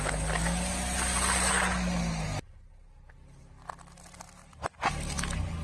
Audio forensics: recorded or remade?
recorded